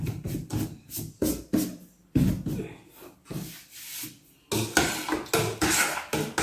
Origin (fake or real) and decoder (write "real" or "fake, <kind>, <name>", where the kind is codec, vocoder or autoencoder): real